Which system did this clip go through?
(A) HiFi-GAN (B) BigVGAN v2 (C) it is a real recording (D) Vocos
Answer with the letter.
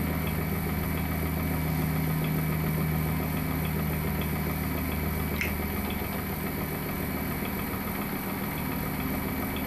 C